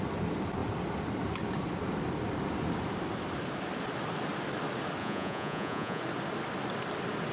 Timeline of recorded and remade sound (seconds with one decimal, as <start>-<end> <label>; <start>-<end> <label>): 0.0-5.0 recorded; 5.0-6.0 remade; 6.0-7.3 recorded